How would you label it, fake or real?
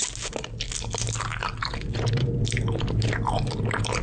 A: real